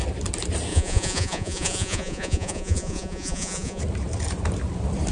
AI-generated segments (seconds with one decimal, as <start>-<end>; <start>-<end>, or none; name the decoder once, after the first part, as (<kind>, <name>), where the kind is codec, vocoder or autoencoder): 0.7-3.8 (vocoder, Vocos)

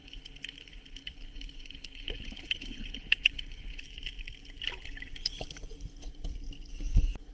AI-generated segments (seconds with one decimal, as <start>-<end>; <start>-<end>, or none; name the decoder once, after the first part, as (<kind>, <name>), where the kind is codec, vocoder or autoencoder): 0.0-3.8 (codec, HILCodec)

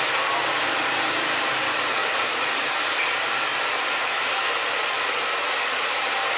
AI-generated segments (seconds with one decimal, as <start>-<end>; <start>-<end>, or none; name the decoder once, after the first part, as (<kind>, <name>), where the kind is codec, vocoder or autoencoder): 0.8-1.5 (vocoder, BigVGAN v2); 2.0-2.7; 3.9-4.6